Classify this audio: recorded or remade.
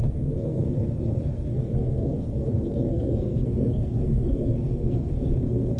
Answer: remade